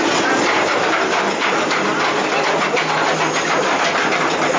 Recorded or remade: recorded